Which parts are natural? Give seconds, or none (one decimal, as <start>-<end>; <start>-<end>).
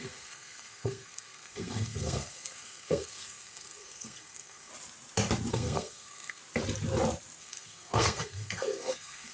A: 4.7-5.5; 6.4-7.4